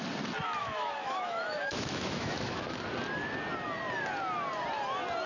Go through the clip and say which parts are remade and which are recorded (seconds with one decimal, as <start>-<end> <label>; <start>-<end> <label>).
0.0-0.6 recorded; 0.6-2.8 remade; 2.8-5.3 recorded